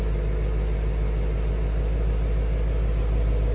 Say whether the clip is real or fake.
real